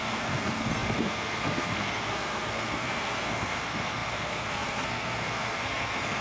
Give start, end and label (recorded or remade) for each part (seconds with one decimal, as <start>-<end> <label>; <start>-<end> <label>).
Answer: 0.0-6.2 remade